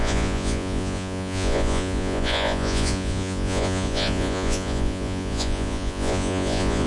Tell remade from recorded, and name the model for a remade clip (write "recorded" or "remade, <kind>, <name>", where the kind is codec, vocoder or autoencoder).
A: remade, vocoder, Vocos